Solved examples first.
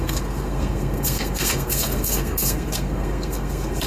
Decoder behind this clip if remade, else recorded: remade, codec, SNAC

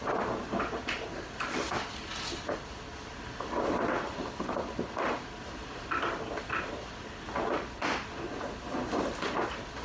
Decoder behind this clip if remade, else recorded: recorded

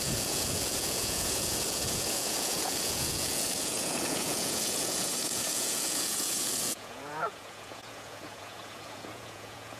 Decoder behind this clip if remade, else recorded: remade, vocoder, Vocos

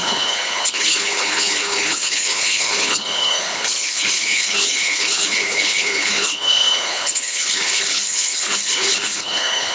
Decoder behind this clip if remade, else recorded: remade, codec, HILCodec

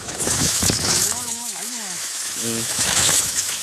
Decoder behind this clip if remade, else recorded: remade, autoencoder, DAC-VAE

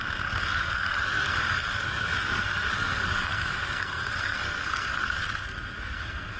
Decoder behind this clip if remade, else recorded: remade, codec, SNAC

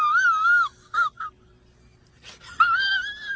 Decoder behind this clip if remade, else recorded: recorded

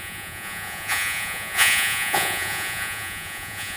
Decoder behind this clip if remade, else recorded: remade, vocoder, Vocos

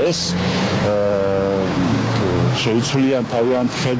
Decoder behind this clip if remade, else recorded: remade, codec, DAC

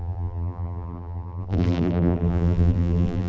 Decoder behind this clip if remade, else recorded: remade, vocoder, BigVGAN v2